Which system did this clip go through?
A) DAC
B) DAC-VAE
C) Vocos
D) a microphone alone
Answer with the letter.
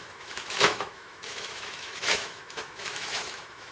B